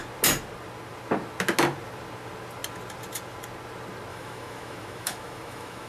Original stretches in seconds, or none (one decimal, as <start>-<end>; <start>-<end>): 0.0-4.1